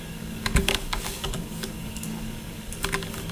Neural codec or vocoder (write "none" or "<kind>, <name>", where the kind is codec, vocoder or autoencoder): codec, DAC